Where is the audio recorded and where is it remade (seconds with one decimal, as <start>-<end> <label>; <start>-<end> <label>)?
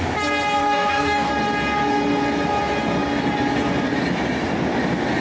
0.0-0.6 recorded; 0.6-1.3 remade; 1.3-5.2 recorded